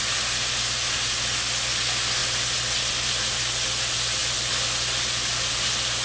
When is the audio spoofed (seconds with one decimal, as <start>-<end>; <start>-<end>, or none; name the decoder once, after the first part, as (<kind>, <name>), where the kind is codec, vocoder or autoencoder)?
none